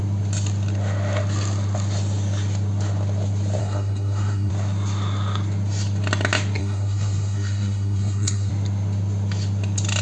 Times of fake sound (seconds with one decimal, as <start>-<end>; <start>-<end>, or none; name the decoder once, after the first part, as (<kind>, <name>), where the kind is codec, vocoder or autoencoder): 3.6-4.5 (codec, SNAC); 6.6-8.5

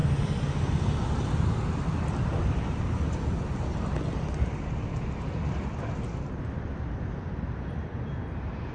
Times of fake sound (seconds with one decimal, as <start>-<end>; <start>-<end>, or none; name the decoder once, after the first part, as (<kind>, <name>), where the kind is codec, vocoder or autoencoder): none